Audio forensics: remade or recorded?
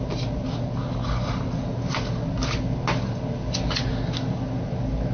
recorded